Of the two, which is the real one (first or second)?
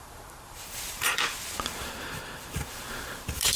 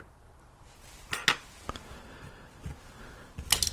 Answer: second